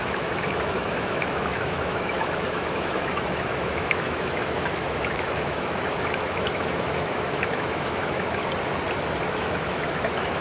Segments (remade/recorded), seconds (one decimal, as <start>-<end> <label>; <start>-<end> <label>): 0.0-8.4 remade; 8.4-9.3 recorded; 9.3-10.4 remade